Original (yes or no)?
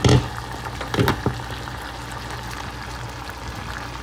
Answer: yes